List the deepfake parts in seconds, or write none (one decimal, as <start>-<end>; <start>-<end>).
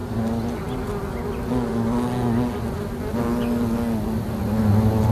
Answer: none